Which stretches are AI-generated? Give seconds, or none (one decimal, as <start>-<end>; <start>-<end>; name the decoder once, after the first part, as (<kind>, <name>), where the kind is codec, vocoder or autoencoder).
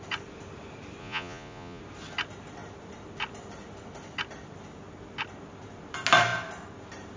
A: 1.0-1.8 (vocoder, Vocos)